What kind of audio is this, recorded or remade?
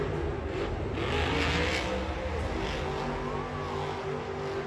recorded